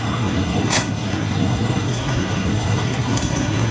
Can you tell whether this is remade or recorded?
remade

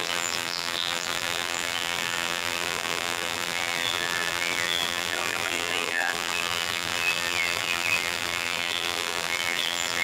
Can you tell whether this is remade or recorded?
remade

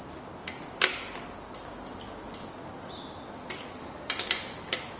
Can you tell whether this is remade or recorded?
recorded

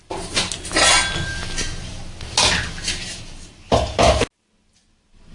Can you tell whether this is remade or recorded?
recorded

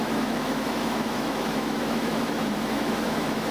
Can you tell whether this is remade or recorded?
remade